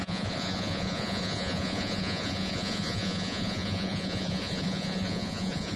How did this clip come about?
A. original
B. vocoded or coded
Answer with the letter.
B